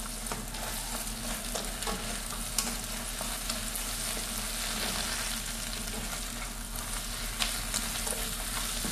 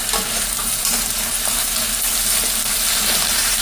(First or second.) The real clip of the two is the first